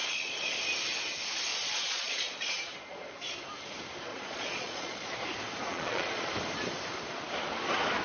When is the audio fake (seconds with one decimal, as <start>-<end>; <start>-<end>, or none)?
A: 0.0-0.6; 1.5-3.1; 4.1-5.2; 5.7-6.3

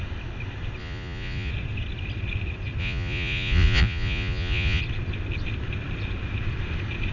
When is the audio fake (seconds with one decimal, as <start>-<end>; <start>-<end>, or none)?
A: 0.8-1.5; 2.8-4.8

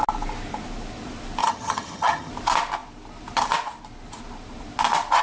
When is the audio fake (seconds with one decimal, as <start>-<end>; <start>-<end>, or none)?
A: 1.4-2.3

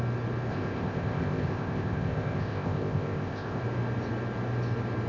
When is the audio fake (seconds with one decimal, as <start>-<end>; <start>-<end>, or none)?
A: 0.5-3.6

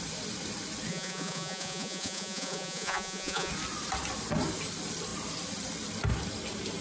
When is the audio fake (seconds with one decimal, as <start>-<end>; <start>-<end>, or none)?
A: 0.9-3.5